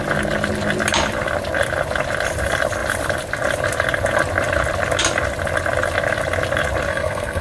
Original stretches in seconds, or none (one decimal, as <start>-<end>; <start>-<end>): 0.0-6.9